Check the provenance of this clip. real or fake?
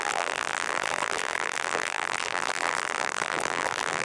fake